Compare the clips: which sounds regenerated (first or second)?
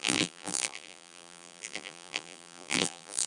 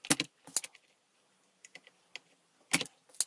first